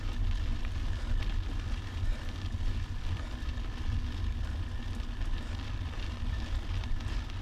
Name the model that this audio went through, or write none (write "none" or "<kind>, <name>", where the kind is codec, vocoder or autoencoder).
none